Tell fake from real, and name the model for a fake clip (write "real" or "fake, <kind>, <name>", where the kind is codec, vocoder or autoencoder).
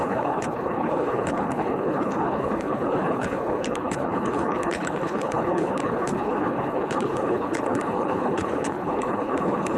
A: fake, codec, HILCodec